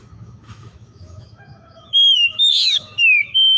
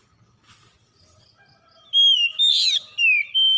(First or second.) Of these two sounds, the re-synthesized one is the first